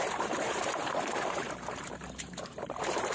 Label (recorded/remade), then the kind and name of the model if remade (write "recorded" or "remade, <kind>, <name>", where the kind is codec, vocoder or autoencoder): remade, vocoder, BigVGAN v2